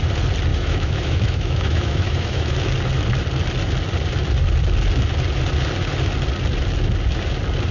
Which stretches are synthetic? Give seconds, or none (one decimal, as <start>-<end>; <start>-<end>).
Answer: 0.5-2.7